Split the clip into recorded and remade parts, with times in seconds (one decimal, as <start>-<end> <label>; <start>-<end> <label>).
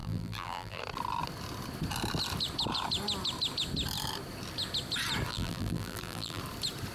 0.0-0.8 remade; 0.8-5.3 recorded; 5.3-6.4 remade; 6.4-6.9 recorded